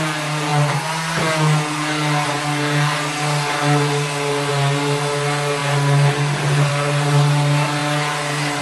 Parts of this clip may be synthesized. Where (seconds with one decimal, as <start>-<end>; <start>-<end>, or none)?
none